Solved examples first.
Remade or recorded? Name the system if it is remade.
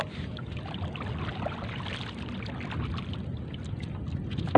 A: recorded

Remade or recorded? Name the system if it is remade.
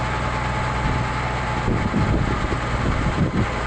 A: recorded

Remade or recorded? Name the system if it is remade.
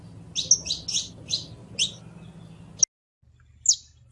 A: recorded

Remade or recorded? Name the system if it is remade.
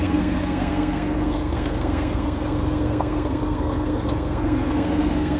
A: remade, codec, SNAC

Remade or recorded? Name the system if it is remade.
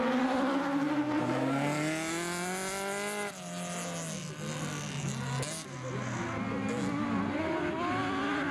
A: recorded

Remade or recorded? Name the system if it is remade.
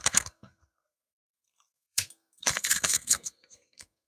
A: remade, codec, SNAC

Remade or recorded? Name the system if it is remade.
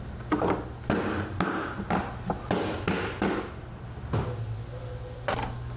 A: recorded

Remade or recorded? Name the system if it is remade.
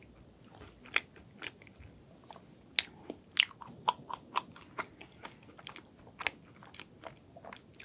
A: recorded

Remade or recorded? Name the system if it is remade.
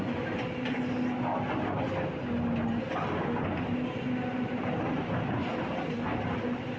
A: recorded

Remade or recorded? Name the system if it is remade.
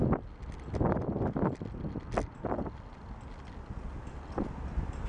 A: recorded